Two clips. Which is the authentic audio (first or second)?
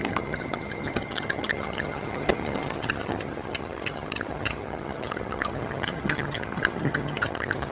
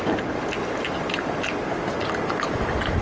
second